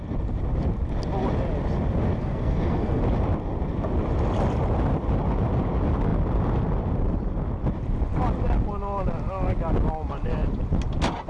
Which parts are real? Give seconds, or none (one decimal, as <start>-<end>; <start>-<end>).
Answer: 0.0-2.2; 3.0-11.3